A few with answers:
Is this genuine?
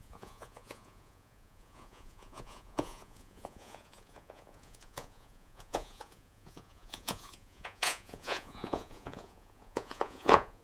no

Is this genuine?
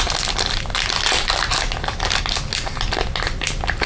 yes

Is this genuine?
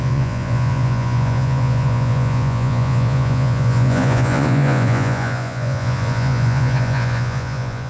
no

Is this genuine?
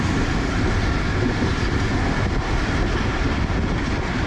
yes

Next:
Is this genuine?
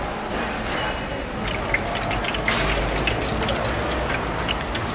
yes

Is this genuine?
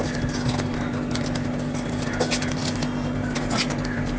yes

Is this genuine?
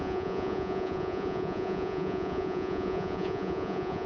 no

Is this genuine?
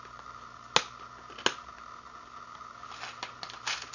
yes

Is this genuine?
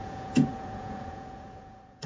no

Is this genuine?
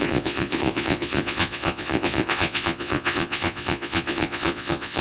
no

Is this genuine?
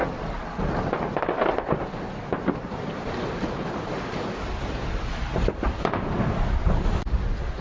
yes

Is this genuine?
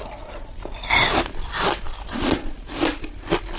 yes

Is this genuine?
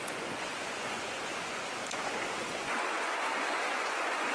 no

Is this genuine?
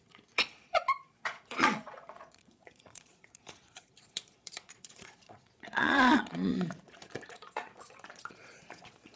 no